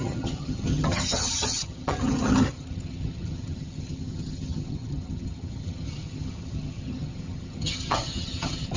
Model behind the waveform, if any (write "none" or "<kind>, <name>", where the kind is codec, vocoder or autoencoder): vocoder, HiFi-GAN